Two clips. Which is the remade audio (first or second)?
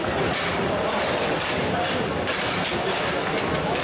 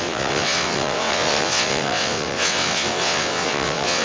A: second